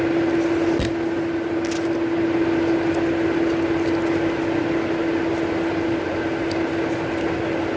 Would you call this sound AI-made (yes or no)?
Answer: no